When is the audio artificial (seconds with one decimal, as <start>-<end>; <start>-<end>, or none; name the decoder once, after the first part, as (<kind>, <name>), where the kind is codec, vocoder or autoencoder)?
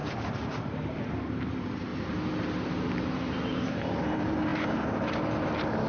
0.6-1.9 (vocoder, BigVGAN v2); 2.9-4.5